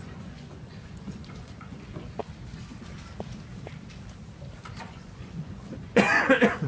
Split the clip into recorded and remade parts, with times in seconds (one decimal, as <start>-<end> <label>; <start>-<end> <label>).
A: 0.0-2.2 remade; 2.2-4.8 recorded; 4.8-6.7 remade